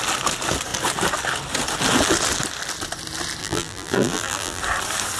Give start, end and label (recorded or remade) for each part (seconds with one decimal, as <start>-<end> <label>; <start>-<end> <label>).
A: 0.0-3.4 recorded; 3.4-4.6 remade; 4.6-5.2 recorded